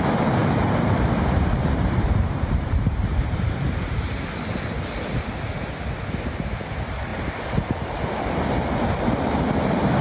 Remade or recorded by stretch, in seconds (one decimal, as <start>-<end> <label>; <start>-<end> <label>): 0.0-0.4 recorded; 0.4-4.1 remade; 4.1-7.1 recorded; 7.1-7.7 remade; 7.7-10.0 recorded